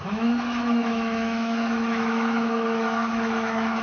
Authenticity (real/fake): fake